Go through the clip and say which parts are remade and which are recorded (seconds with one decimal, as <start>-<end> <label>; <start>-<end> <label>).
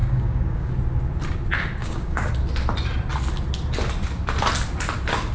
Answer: 0.0-0.7 remade; 0.7-1.8 recorded; 1.8-2.3 remade; 2.3-5.3 recorded